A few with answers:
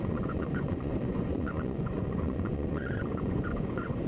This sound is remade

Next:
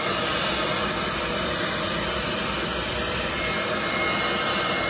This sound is recorded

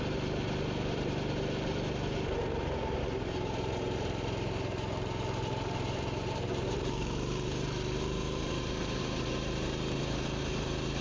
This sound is remade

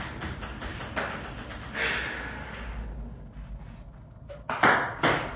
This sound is recorded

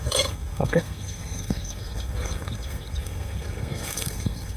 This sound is remade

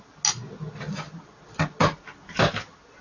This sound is recorded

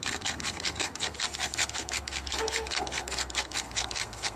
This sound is remade